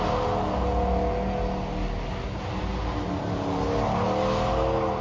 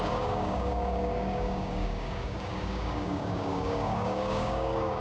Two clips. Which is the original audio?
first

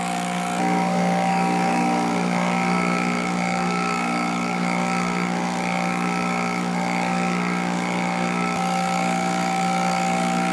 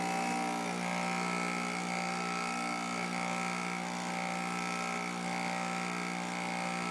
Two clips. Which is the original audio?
second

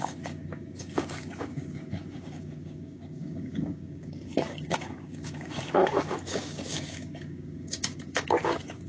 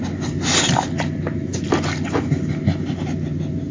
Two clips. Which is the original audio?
second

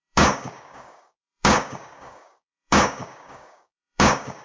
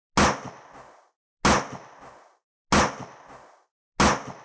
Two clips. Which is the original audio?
second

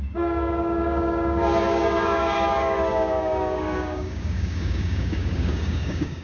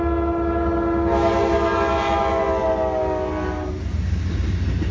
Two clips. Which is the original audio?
second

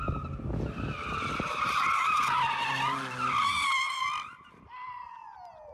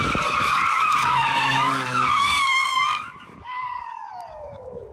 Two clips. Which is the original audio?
first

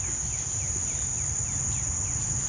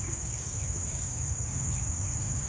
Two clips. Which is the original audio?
first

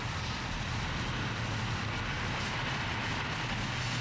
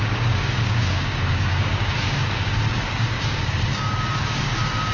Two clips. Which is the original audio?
first